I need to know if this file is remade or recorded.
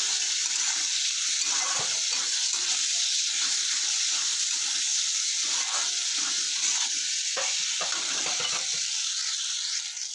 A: recorded